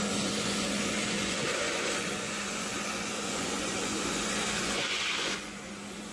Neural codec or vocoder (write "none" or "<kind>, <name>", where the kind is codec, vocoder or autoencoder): vocoder, Vocos